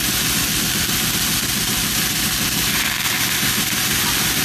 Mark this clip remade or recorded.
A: recorded